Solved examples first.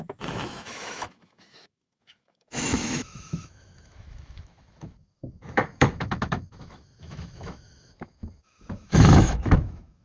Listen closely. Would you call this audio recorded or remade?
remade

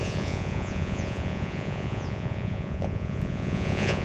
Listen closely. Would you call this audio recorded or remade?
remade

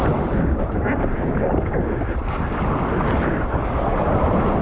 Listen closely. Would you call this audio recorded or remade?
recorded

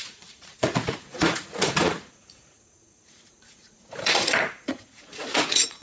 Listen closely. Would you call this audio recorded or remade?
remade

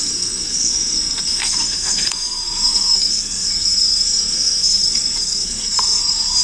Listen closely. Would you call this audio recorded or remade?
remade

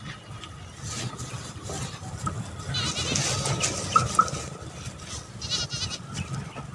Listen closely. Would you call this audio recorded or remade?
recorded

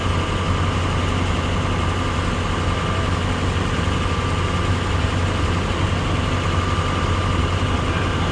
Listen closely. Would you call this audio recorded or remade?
recorded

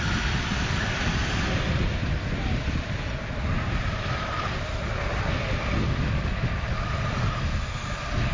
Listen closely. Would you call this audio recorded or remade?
recorded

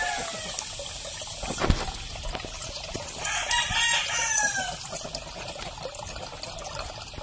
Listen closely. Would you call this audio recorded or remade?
recorded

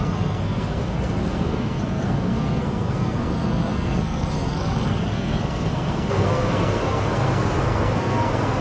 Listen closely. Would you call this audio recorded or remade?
remade